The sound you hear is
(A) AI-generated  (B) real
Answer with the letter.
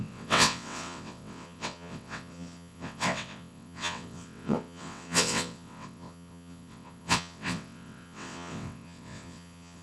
A